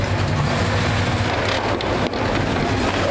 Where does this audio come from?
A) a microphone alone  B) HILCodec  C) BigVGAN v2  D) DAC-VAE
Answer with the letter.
A